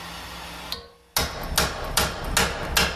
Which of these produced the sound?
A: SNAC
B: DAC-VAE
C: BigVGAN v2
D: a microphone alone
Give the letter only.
D